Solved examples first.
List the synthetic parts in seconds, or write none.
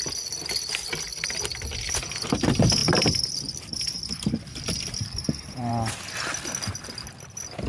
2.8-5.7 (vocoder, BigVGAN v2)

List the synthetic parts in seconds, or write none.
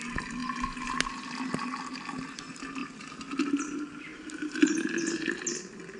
4.1-4.7 (vocoder, BigVGAN v2)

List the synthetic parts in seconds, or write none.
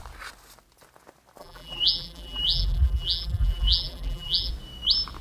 1.4-4.5 (vocoder, BigVGAN v2)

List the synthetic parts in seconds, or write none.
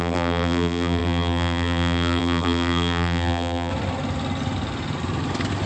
0.0-3.7 (vocoder, BigVGAN v2)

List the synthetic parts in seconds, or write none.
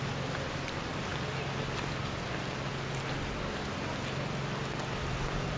none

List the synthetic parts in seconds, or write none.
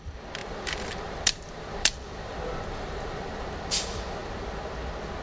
0.4-3.5 (vocoder, BigVGAN v2)